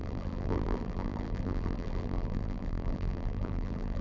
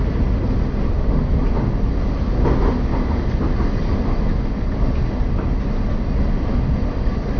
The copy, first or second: first